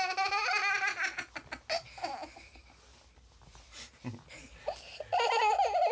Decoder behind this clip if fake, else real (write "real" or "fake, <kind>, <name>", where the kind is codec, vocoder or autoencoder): real